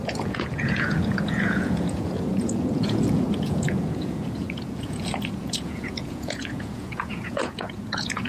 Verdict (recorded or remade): remade